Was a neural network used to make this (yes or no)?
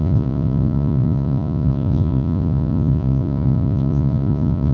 yes